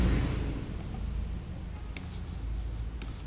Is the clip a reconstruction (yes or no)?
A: no